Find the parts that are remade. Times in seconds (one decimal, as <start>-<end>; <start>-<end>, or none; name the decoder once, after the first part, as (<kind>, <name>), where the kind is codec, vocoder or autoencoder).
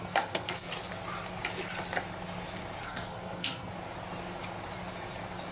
0.0-0.7 (codec, SNAC); 2.8-3.7